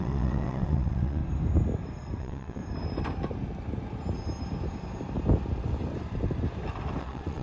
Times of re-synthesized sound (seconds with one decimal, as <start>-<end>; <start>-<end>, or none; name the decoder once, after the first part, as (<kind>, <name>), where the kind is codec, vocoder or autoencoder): 0.0-1.2 (vocoder, WaveNeXt); 2.2-2.6; 7.0-7.4